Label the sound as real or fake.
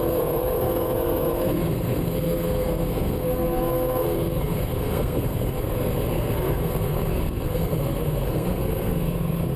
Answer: fake